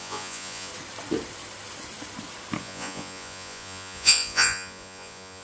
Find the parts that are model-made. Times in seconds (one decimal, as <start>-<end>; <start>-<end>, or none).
0.0-0.7; 2.6-5.4